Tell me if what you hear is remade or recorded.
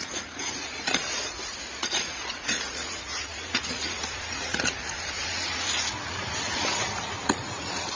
remade